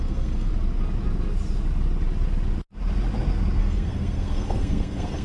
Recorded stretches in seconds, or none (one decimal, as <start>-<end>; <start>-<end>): 0.5-3.6